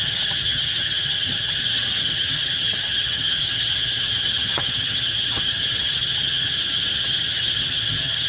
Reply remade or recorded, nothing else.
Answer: remade